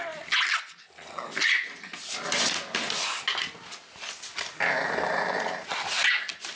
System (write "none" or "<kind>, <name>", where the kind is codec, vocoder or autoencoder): none